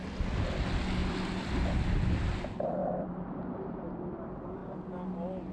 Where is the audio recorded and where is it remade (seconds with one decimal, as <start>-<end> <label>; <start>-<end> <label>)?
0.0-1.0 recorded; 1.0-2.4 remade; 2.4-2.8 recorded; 2.8-4.1 remade; 4.1-5.5 recorded